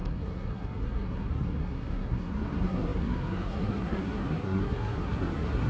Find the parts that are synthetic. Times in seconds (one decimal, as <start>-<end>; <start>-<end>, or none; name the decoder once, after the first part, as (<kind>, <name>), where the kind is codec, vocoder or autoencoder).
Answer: 0.0-5.7 (codec, SNAC)

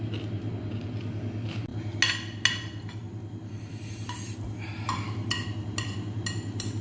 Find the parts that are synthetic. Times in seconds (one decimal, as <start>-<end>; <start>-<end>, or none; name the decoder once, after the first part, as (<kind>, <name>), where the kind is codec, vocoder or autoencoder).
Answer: none

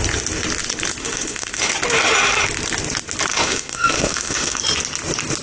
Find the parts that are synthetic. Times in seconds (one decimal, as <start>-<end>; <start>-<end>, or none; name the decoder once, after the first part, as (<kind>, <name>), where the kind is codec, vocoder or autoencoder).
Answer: 1.0-1.7 (autoencoder, DAC-VAE); 3.3-4.6

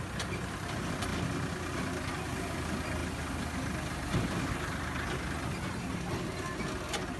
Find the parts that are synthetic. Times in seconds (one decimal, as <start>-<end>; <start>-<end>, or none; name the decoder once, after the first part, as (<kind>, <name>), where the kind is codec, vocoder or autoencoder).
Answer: none

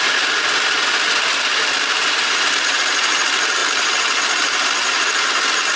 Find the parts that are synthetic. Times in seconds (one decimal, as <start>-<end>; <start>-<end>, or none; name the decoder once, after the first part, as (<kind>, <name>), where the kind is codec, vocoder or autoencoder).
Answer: 1.5-2.7 (vocoder, BigVGAN v2)

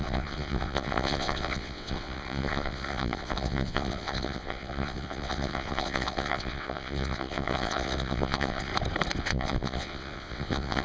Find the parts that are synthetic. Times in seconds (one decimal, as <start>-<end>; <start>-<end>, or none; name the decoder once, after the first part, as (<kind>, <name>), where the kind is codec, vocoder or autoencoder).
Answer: 0.0-8.7 (vocoder, WaveNeXt); 9.2-10.8

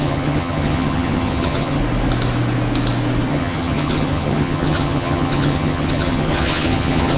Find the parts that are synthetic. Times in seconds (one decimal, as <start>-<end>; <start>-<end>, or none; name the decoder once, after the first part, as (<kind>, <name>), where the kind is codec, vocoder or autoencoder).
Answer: 0.0-1.8 (vocoder, HiFi-GAN); 3.3-7.2